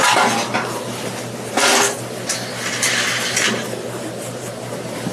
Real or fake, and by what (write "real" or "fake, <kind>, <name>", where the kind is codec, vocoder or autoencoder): real